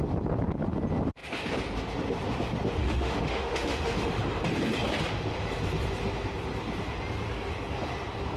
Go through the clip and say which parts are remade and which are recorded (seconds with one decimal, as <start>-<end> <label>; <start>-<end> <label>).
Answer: 0.0-2.8 recorded; 2.8-4.2 remade; 4.2-8.4 recorded